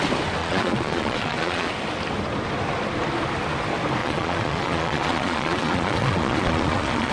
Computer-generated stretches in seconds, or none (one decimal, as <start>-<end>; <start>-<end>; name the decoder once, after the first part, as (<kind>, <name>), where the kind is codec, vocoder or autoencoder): 0.4-1.7 (vocoder, Vocos); 4.0-7.1